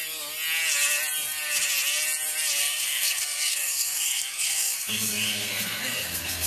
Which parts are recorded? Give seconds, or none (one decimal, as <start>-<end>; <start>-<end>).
0.0-2.6